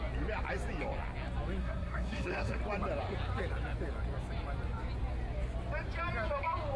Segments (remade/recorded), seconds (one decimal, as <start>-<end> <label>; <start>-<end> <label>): 0.0-1.6 recorded; 1.6-2.6 remade; 2.6-6.8 recorded